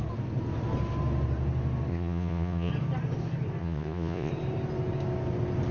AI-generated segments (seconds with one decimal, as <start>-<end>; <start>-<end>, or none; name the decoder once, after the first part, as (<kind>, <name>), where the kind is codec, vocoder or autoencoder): 1.9-2.7 (vocoder, Vocos); 3.6-4.3